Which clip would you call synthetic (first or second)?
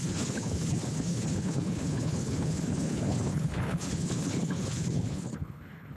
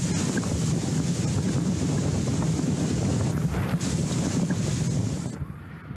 first